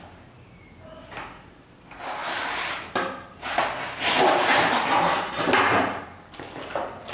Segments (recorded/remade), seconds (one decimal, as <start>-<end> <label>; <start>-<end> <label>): 0.0-7.1 recorded